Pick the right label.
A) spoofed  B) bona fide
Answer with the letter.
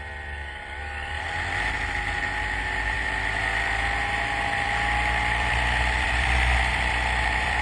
A